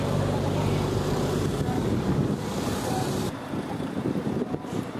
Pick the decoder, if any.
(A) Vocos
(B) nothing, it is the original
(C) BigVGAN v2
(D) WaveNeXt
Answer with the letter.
C